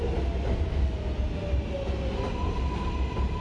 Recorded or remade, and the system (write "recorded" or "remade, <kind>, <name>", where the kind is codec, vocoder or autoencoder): recorded